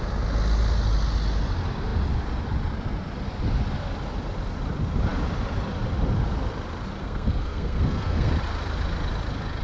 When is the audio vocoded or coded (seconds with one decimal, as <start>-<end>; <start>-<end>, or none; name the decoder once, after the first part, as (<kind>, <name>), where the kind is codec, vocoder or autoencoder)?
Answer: 7.0-8.3 (codec, SNAC)